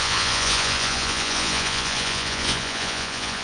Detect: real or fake fake